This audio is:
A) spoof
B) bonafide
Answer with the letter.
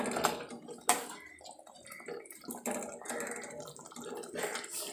B